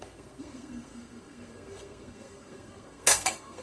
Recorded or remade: remade